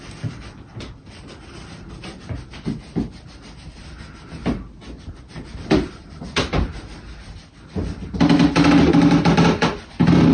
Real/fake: real